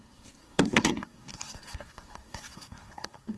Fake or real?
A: fake